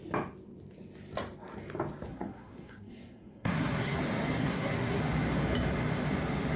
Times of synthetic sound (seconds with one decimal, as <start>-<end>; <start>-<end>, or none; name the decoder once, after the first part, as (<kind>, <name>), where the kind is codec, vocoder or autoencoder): 2.1-4.0 (codec, SNAC); 4.4-5.0